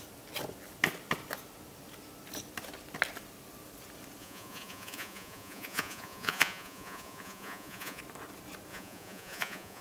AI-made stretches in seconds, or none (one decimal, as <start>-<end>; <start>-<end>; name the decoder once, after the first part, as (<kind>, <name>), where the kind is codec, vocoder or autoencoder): 4.2-8.0 (vocoder, Vocos); 8.7-9.8